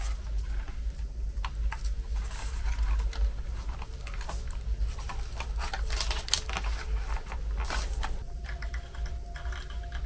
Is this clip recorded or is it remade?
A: recorded